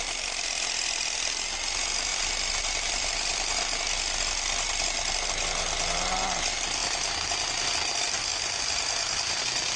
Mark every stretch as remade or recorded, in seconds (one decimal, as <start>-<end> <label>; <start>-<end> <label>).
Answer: 0.0-2.1 recorded; 2.1-3.8 remade; 3.8-9.8 recorded